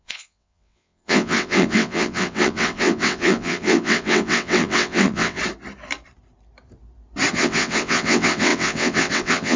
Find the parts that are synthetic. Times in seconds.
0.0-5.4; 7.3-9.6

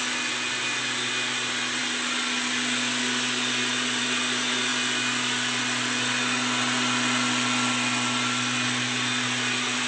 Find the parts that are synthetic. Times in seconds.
none

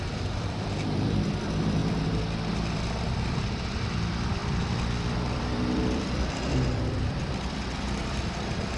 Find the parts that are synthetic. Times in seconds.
0.0-1.8; 2.9-8.8

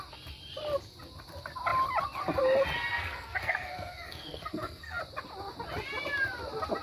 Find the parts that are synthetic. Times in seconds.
2.9-5.0

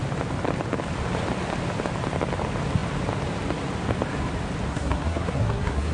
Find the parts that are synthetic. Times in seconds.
4.7-5.9